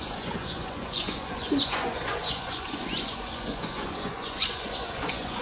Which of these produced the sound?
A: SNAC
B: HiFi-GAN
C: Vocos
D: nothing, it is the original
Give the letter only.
C